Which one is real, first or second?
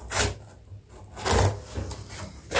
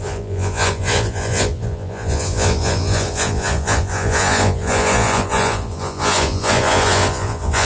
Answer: first